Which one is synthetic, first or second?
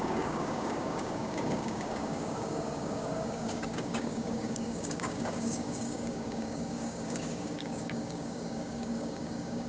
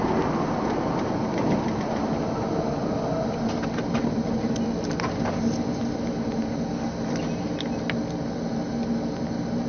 first